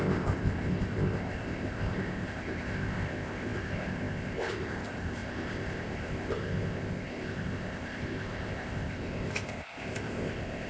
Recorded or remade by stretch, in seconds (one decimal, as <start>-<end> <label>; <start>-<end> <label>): 0.0-10.7 remade